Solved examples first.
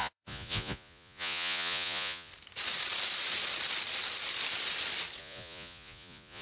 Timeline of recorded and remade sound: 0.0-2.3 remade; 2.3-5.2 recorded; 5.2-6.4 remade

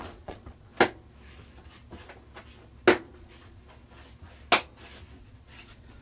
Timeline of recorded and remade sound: 0.0-0.7 remade; 0.7-3.1 recorded; 3.1-3.6 remade; 3.6-5.2 recorded; 5.2-6.0 remade

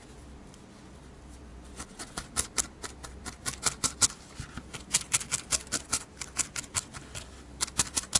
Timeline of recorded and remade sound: 0.0-1.5 recorded; 1.5-2.1 remade; 2.1-8.2 recorded

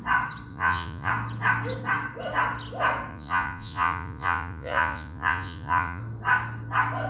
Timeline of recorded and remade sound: 0.0-0.5 recorded; 0.5-1.1 remade; 1.1-3.1 recorded; 3.1-6.0 remade; 6.0-7.1 recorded

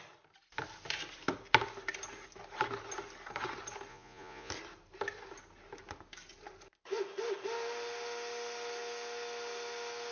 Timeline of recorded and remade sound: 0.0-3.9 recorded; 3.9-4.5 remade; 4.5-10.1 recorded